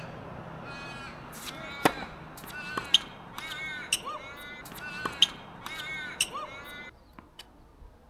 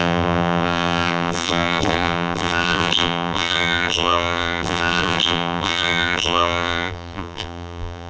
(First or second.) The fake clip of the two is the second